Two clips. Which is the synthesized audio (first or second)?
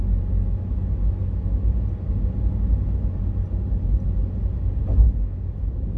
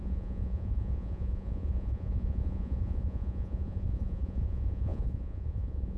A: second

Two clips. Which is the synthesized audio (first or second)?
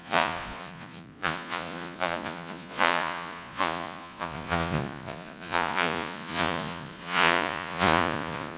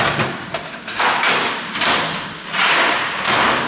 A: first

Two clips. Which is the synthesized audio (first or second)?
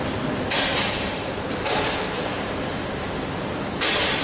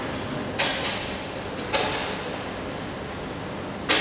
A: first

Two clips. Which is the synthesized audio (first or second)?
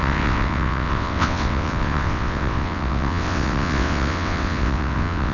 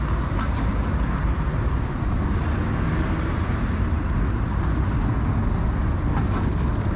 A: first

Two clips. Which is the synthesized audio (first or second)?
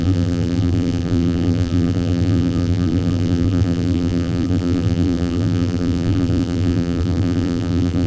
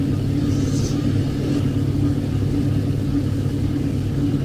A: first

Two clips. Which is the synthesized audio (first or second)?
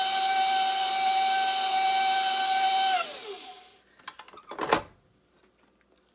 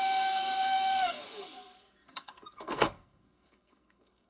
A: second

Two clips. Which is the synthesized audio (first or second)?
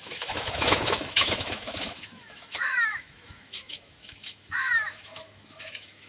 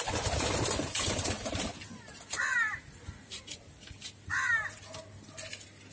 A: first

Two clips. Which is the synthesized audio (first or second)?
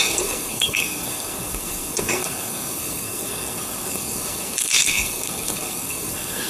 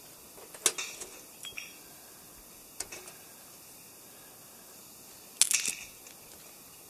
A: first